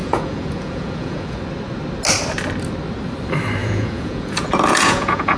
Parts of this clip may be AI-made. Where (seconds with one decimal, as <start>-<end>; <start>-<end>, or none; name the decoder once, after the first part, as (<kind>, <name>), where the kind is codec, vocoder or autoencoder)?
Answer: 0.0-1.4 (vocoder, Vocos); 3.6-5.4